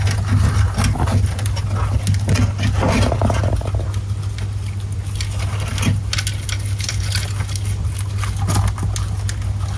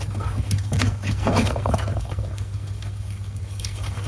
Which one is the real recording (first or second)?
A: first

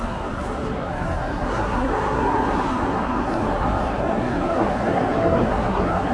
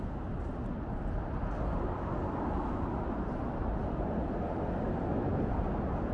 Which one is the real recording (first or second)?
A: second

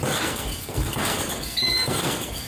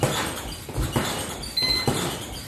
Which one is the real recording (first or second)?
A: second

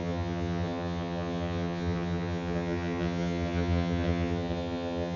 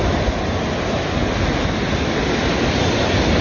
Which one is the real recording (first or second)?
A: second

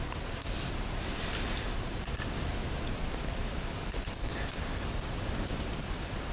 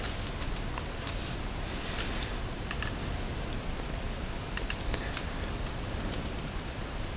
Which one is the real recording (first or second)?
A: second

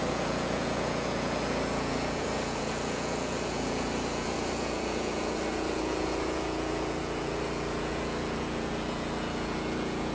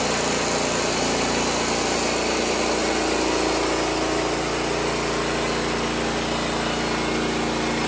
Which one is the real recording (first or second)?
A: second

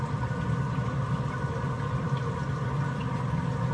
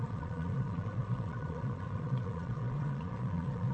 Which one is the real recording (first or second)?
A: first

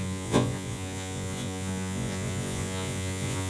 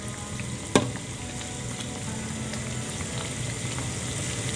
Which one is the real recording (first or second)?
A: second